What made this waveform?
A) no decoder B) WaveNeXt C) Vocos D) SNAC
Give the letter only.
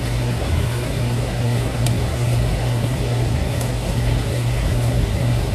D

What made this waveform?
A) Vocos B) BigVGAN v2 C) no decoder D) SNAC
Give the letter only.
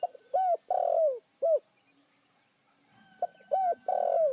C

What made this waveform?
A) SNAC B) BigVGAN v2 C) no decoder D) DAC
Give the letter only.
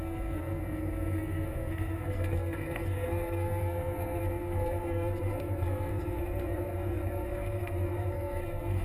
A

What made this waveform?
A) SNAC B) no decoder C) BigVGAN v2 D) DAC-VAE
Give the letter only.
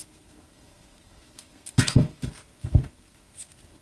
A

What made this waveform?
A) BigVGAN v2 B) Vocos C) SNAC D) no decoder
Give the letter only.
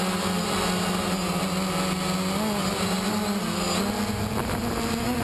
D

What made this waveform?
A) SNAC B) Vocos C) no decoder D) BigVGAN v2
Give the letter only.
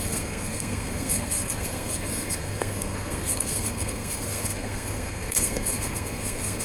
A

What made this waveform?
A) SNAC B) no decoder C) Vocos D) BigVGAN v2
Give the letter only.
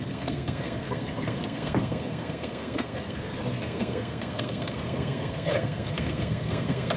A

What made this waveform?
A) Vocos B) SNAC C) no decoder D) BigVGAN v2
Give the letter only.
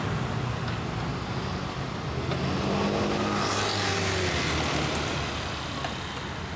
C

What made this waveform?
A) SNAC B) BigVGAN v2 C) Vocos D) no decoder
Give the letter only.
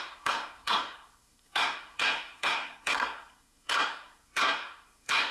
A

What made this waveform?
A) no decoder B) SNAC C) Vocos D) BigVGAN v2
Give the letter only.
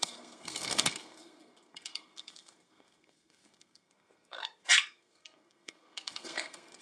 B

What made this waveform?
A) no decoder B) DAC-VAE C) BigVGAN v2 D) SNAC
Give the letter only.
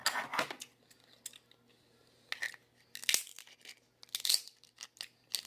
A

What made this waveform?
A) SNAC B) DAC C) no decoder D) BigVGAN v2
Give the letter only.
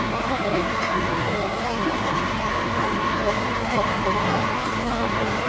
A